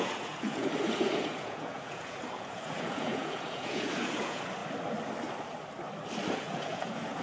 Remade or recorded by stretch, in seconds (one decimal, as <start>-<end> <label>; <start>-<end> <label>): 0.0-4.6 remade; 4.6-6.3 recorded; 6.3-7.2 remade

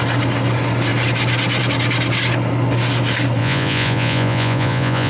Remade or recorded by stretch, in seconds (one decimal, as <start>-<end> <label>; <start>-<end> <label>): 0.0-3.4 recorded; 3.4-5.1 remade

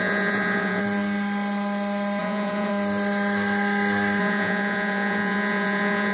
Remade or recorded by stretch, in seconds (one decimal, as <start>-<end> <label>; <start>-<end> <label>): 0.0-0.8 remade; 0.8-2.2 recorded; 2.2-2.7 remade; 2.7-4.2 recorded; 4.2-6.1 remade

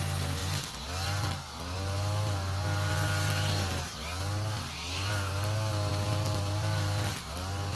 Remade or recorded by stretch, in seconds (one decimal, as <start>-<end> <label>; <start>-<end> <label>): 0.0-7.8 recorded

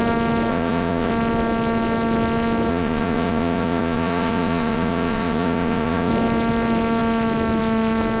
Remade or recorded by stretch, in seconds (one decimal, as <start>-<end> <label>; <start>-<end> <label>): 0.0-0.5 recorded; 0.5-1.1 remade; 1.1-2.7 recorded; 2.7-6.1 remade; 6.1-8.2 recorded